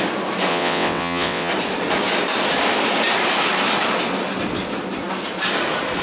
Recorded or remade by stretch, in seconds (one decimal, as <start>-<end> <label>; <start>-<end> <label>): 0.0-0.5 recorded; 0.5-1.5 remade; 1.5-6.0 recorded